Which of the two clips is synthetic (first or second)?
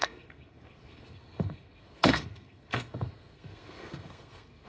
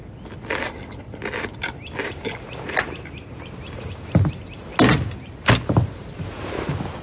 first